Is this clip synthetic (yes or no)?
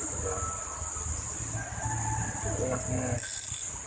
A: no